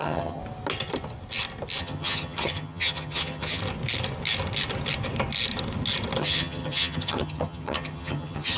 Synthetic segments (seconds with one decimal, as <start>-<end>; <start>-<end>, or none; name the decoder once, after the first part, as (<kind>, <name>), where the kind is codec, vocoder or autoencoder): 0.0-0.4 (vocoder, HiFi-GAN); 1.8-3.6; 6.2-8.6